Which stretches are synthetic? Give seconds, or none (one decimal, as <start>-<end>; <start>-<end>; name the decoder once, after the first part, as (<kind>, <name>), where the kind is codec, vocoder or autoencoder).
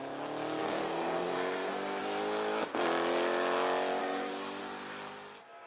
0.6-2.0 (codec, SNAC); 4.0-4.6